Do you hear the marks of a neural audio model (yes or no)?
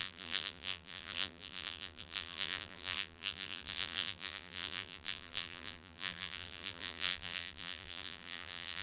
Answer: yes